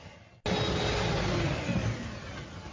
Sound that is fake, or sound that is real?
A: real